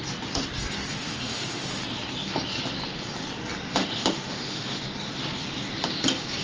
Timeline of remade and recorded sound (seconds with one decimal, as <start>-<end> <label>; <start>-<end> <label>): 0.0-0.9 recorded; 0.9-1.8 remade; 1.8-3.7 recorded; 3.7-4.8 remade; 4.8-6.4 recorded